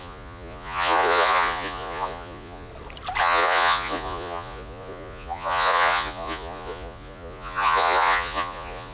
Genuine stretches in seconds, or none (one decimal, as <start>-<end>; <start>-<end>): 2.7-3.2